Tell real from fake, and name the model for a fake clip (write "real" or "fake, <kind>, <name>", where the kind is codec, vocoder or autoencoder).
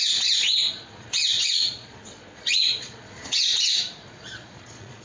fake, vocoder, Vocos